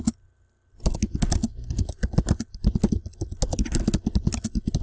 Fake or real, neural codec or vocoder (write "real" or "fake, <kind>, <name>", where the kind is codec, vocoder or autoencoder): real